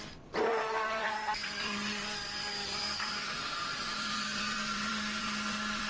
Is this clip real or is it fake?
fake